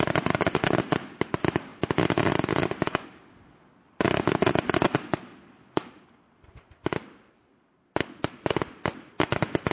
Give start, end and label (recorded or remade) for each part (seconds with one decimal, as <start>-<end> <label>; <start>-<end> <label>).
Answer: 0.0-9.7 recorded